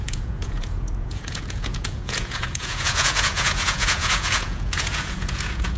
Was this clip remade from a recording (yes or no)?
yes